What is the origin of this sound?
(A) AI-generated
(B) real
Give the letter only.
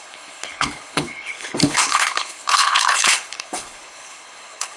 A